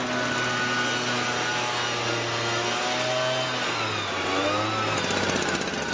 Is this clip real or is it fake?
real